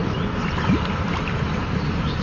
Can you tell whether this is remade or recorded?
remade